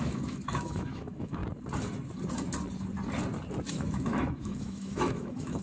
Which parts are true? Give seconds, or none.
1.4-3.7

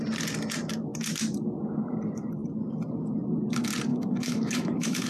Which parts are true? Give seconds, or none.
0.0-3.9

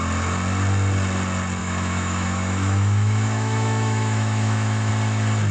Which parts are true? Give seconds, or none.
0.0-1.6; 4.9-5.5

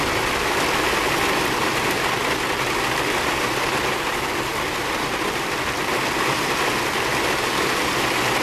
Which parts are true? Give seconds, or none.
0.0-8.4